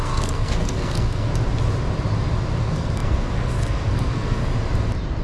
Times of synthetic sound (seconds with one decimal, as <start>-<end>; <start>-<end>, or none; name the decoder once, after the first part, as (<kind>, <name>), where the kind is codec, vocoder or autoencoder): 0.0-1.3 (codec, SNAC); 2.6-4.4